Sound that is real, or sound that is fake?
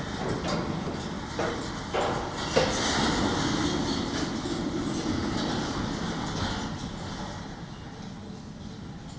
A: real